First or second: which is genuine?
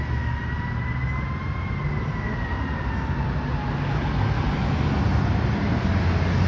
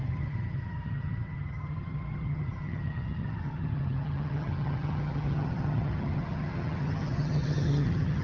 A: first